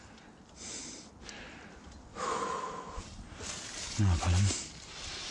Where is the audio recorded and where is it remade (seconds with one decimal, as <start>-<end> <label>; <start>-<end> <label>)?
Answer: 0.0-2.1 recorded; 2.1-3.0 remade; 3.0-5.3 recorded